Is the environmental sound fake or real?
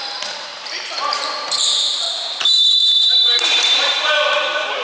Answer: fake